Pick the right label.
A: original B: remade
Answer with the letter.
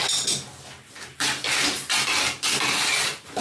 A